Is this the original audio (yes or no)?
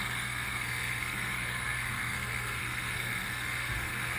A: no